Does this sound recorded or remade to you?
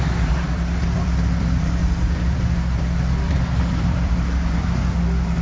remade